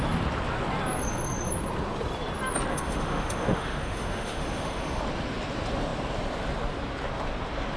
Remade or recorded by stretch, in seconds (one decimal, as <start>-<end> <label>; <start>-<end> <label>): 0.0-2.7 recorded; 2.7-5.0 remade; 5.0-7.8 recorded